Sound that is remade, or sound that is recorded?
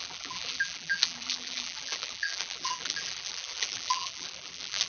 remade